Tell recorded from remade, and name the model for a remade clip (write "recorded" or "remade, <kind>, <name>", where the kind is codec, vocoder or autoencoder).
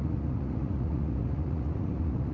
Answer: remade, vocoder, Vocos